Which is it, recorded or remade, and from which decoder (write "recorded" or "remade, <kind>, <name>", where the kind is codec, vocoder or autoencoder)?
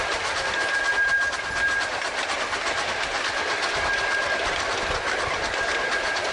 recorded